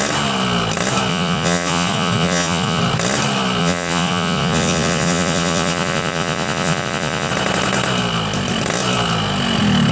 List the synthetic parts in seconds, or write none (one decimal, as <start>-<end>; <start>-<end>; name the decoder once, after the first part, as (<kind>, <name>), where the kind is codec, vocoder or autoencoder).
1.1-2.8 (vocoder, Vocos); 3.6-7.3